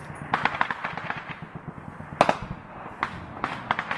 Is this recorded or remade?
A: recorded